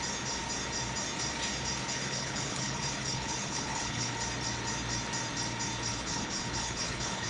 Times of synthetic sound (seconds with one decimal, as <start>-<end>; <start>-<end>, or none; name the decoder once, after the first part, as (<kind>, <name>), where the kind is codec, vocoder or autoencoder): 1.9-4.1 (codec, HILCodec); 5.9-7.3